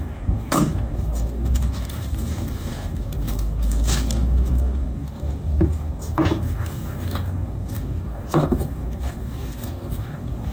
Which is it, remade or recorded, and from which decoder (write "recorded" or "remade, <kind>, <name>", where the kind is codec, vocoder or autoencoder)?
remade, codec, DAC